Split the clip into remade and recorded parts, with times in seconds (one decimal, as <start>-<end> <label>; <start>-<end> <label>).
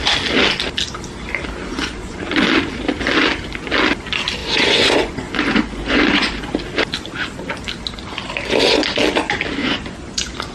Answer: 0.0-1.7 recorded; 1.7-2.4 remade; 2.4-4.4 recorded; 4.4-6.5 remade; 6.5-9.6 recorded; 9.6-10.5 remade